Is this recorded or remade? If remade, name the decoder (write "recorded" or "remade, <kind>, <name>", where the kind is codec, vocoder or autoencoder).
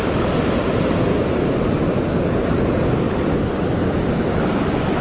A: recorded